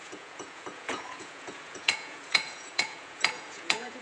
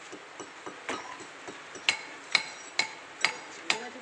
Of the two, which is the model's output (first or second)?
first